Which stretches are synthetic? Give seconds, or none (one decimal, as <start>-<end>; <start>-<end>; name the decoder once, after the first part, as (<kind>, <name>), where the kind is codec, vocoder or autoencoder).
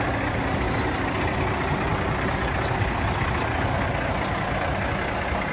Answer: none